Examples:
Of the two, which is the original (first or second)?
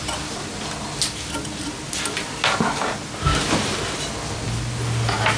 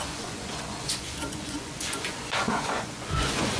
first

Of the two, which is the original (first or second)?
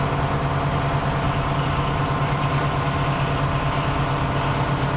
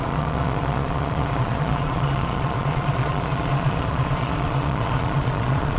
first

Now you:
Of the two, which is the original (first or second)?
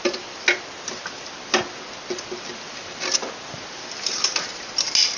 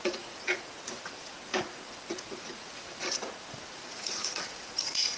first